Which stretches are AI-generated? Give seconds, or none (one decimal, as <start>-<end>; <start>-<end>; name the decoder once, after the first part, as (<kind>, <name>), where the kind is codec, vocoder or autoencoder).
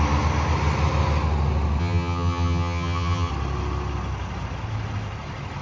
1.8-3.3 (vocoder, HiFi-GAN)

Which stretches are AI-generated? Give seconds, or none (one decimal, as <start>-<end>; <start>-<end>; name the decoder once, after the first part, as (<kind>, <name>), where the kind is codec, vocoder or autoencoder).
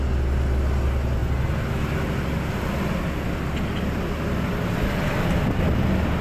none